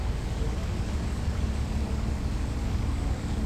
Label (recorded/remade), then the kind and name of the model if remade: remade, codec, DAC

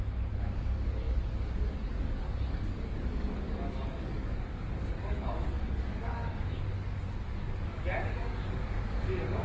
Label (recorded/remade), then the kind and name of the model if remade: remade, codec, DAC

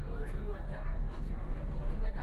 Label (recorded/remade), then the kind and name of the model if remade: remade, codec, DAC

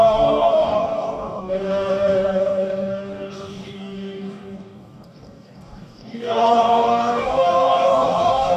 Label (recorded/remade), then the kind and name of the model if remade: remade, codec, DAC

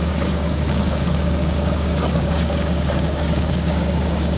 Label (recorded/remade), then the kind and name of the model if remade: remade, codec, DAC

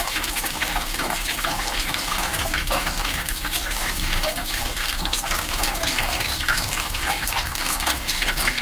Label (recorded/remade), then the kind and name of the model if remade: remade, codec, DAC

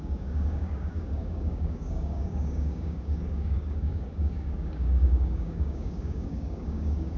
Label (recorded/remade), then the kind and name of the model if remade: remade, codec, DAC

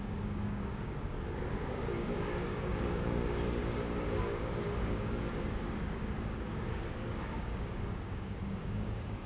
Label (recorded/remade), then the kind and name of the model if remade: remade, codec, DAC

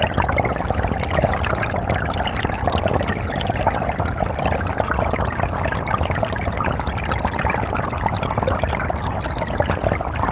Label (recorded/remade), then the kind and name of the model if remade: recorded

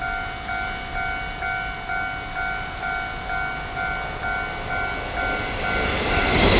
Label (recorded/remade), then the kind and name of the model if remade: recorded